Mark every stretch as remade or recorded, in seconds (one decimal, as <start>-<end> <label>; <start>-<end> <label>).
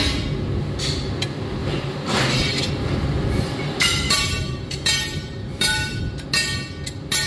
0.0-1.6 recorded; 1.6-6.0 remade; 6.0-7.3 recorded